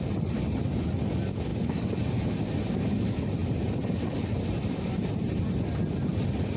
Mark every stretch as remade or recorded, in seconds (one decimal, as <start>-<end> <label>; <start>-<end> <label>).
0.0-1.5 recorded; 1.5-2.5 remade; 2.5-3.4 recorded; 3.4-5.4 remade; 5.4-6.6 recorded